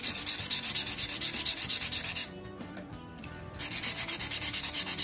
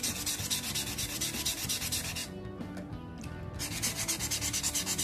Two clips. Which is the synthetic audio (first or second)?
first